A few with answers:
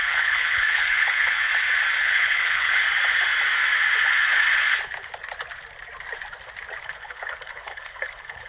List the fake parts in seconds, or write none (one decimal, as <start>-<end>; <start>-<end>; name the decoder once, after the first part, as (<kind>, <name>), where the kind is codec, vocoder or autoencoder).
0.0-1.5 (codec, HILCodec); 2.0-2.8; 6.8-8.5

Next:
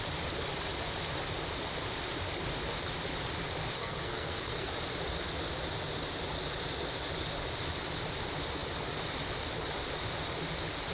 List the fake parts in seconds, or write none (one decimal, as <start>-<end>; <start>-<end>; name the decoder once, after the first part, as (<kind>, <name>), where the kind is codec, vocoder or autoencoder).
3.8-4.7 (codec, SNAC)

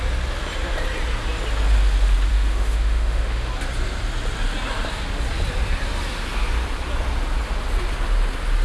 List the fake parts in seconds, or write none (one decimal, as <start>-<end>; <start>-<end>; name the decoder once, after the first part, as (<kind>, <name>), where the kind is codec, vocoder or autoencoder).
2.3-3.5 (autoencoder, DAC-VAE)